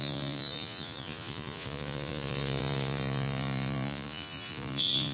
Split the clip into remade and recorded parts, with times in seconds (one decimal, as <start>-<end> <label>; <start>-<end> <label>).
0.0-5.1 remade